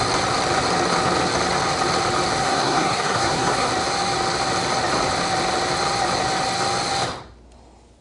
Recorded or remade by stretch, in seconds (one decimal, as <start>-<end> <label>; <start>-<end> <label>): 0.0-2.4 recorded; 2.4-3.7 remade; 3.7-8.0 recorded